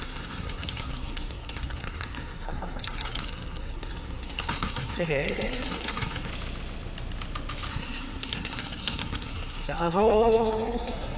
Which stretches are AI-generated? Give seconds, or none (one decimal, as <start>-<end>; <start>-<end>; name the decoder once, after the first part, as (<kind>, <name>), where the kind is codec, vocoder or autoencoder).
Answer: 0.0-6.3 (codec, SNAC); 7.7-11.2